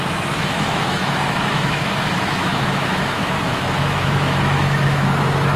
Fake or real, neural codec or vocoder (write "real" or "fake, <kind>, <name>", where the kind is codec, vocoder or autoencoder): fake, autoencoder, DAC-VAE